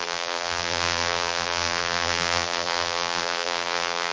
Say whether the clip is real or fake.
fake